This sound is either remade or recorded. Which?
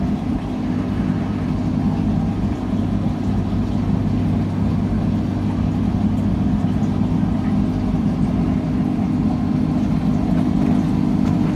recorded